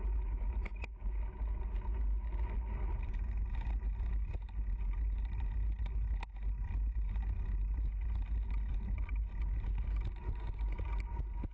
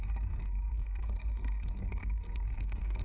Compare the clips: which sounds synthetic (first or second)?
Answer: second